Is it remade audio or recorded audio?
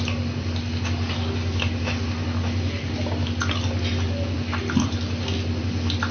recorded